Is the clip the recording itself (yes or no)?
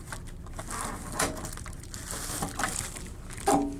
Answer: yes